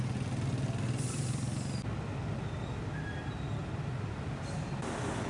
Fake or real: real